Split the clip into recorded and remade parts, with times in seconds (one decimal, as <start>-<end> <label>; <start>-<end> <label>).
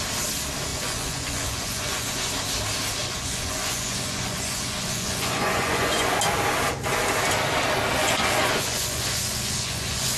0.0-0.7 recorded; 0.7-2.3 remade; 2.3-3.0 recorded; 3.0-6.2 remade; 6.2-8.0 recorded; 8.0-10.2 remade